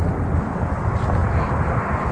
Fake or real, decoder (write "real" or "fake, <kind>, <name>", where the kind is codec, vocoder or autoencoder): real